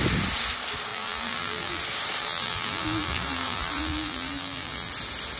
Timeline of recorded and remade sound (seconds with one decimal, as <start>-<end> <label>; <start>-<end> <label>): 0.0-0.9 recorded; 0.9-1.8 remade; 1.8-2.2 recorded; 2.2-4.9 remade; 4.9-5.4 recorded